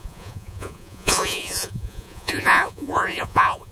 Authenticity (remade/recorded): remade